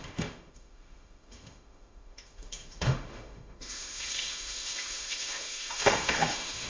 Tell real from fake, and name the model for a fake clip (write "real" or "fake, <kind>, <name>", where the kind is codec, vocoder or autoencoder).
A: fake, autoencoder, DAC-VAE